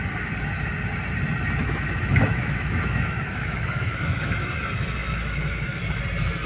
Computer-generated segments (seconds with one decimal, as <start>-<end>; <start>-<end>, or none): 1.6-4.6; 5.0-6.0

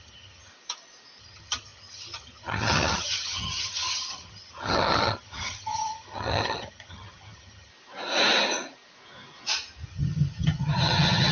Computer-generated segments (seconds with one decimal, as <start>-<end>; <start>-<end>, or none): 0.0-0.5; 1.2-7.7; 9.9-11.3

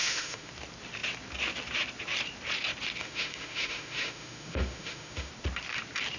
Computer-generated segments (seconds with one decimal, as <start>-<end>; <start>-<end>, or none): 0.0-0.5; 3.0-5.3

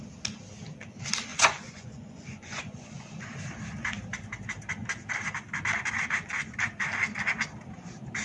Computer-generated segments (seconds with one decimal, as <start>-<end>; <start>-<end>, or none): 1.3-3.3